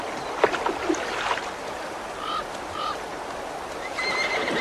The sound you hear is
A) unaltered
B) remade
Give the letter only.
A